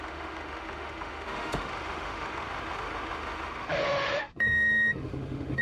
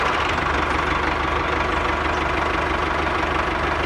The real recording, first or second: second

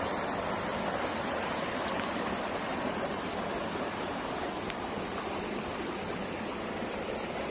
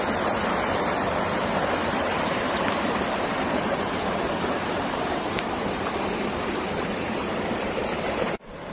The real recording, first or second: first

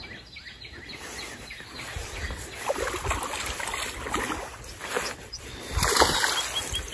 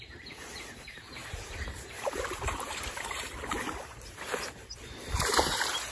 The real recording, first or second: first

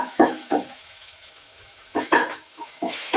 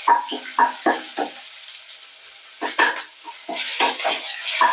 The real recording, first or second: second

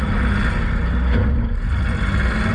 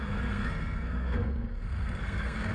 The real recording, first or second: first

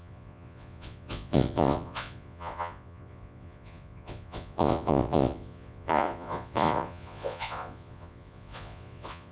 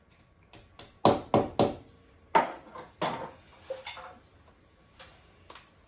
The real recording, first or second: second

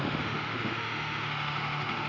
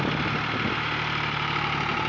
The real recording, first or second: second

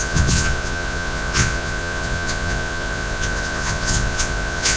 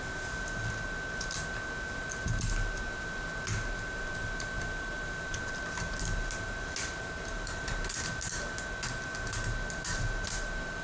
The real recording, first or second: second